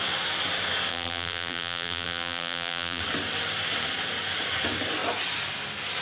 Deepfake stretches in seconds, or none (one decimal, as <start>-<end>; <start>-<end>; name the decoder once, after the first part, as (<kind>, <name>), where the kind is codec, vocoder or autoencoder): 0.9-3.0 (vocoder, BigVGAN v2)